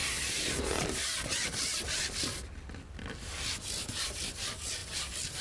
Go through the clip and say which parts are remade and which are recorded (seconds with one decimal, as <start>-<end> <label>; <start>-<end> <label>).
0.0-1.8 recorded; 1.8-5.4 remade